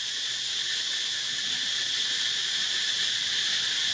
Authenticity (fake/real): real